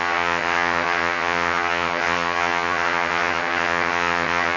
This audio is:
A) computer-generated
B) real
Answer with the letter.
A